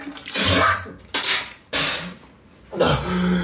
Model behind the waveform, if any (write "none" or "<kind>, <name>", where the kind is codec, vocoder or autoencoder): none